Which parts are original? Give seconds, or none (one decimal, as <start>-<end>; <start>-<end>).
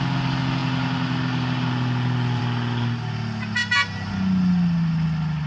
0.0-5.5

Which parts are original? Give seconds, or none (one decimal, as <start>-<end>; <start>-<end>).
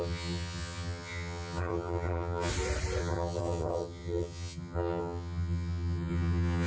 2.5-3.0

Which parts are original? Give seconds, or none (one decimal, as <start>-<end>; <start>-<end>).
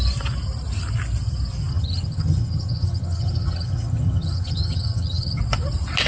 0.0-1.7; 5.4-6.1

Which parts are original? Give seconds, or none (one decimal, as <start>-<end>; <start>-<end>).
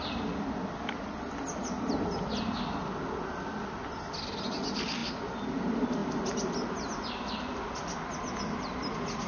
0.0-9.3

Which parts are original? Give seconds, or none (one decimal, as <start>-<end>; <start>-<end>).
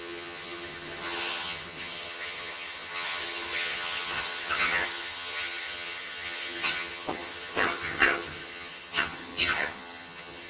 none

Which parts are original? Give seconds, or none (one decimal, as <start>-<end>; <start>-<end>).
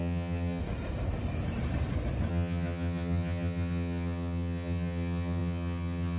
0.6-2.3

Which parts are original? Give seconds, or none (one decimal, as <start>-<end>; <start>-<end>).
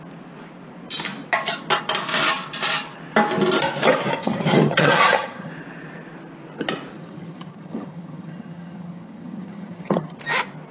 0.0-4.2; 5.5-6.9; 10.2-10.7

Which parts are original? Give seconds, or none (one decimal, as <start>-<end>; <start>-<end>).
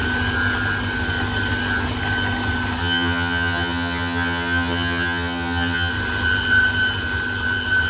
0.0-2.8; 5.9-7.9